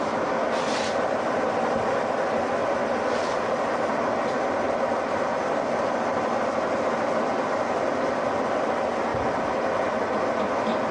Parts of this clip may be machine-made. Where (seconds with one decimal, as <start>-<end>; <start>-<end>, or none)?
none